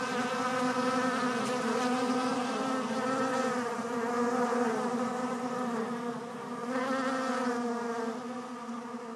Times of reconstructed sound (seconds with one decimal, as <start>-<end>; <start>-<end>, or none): 2.3-6.1